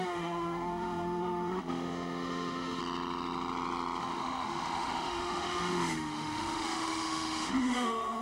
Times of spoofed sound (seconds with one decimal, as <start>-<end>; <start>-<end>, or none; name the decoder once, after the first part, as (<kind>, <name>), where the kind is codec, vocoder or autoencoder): 0.0-2.8 (autoencoder, DAC-VAE); 4.0-8.2